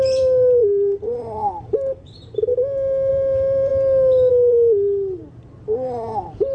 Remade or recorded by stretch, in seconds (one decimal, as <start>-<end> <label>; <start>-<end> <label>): 0.0-2.5 remade; 2.5-3.1 recorded; 3.1-3.7 remade; 3.7-4.3 recorded; 4.3-6.5 remade

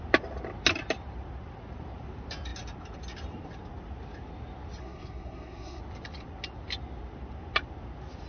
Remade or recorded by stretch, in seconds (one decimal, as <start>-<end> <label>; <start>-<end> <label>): 0.0-4.8 recorded; 4.8-5.8 remade; 5.8-8.3 recorded

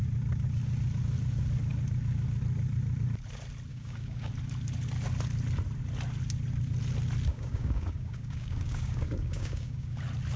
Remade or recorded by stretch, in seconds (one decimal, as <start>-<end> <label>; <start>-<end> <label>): 0.0-3.7 recorded; 3.7-4.3 remade; 4.3-7.3 recorded; 7.3-10.0 remade; 10.0-10.4 recorded

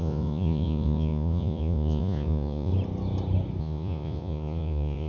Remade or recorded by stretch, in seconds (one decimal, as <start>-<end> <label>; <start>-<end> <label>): 0.0-2.7 remade; 2.7-3.6 recorded; 3.6-5.1 remade

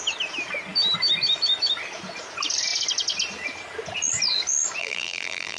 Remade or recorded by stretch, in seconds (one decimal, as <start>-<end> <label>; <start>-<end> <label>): 0.0-4.8 recorded; 4.8-5.6 remade

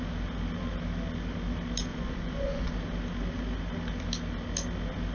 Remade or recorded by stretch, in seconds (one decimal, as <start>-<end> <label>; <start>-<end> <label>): 0.0-1.9 recorded; 1.9-2.7 remade; 2.7-5.1 recorded

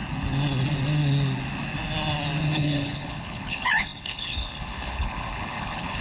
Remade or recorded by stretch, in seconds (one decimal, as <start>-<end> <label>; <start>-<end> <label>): 0.0-2.4 recorded; 2.4-6.0 remade